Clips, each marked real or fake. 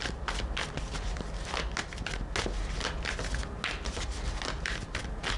real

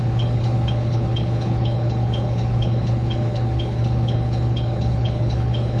fake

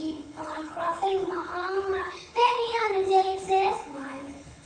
fake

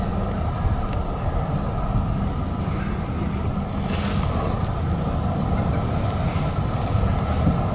real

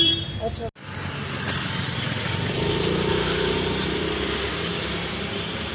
real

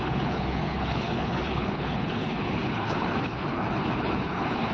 fake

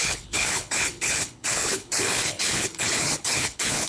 fake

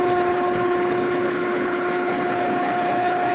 fake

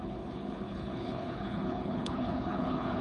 fake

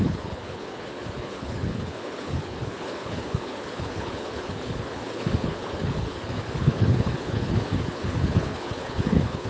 fake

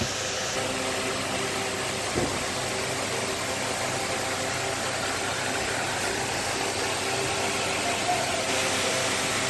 real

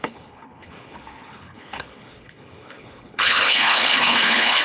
fake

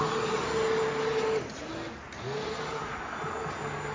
real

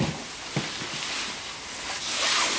real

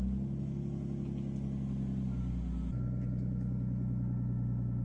real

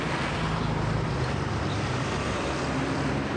real